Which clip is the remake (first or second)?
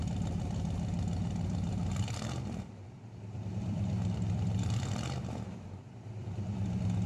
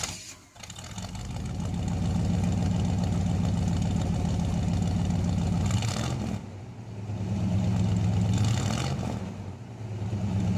first